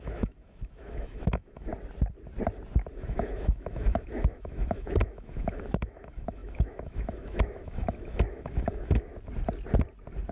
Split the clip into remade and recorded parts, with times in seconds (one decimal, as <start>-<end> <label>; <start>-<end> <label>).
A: 0.0-1.7 remade; 1.7-2.9 recorded; 2.9-9.1 remade; 9.1-10.3 recorded